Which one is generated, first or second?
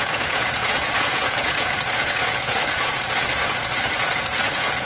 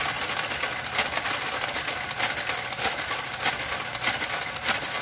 first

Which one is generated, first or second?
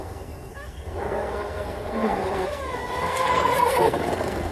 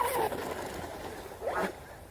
first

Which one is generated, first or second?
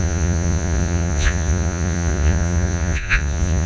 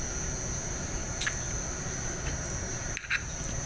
first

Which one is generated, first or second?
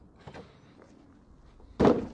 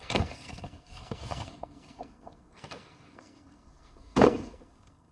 second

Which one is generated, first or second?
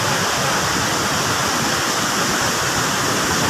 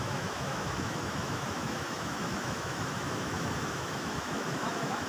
second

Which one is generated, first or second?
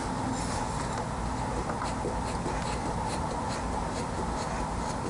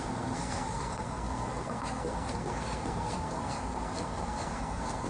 second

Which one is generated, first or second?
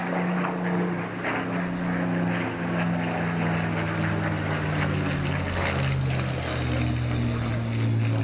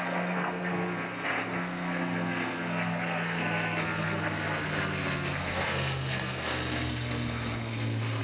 second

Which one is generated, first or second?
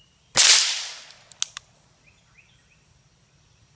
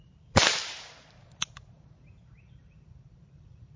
second